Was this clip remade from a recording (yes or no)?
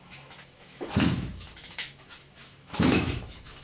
yes